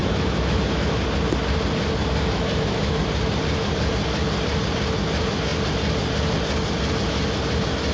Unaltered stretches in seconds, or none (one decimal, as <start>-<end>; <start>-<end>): 1.0-2.0; 3.0-7.9